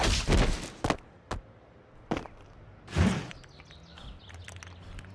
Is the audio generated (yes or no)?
no